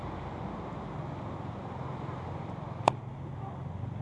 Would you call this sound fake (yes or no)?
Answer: no